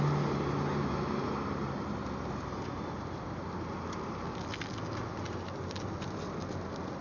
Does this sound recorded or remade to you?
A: recorded